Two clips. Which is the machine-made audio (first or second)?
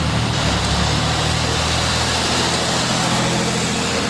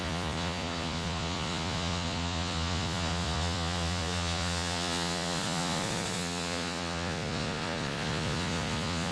second